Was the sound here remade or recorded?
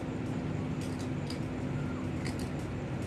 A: recorded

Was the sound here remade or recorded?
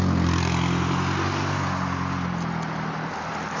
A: recorded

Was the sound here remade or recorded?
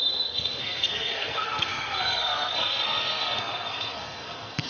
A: remade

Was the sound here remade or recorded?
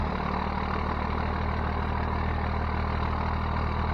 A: recorded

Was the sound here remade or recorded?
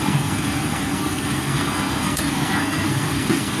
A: remade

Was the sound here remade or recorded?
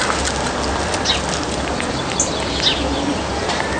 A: recorded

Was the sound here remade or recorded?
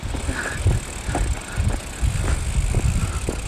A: recorded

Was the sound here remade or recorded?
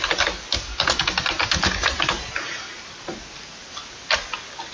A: recorded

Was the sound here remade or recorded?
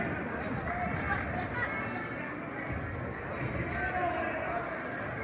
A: recorded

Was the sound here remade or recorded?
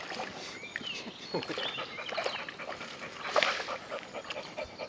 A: recorded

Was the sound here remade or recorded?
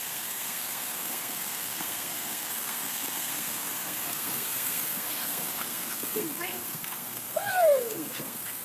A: remade